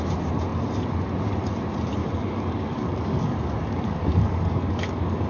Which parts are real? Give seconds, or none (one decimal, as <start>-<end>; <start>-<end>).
0.0-2.0